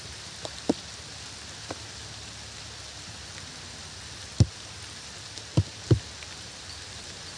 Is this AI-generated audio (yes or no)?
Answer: yes